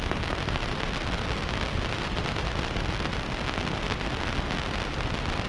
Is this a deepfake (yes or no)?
no